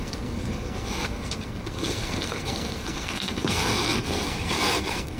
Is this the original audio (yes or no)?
no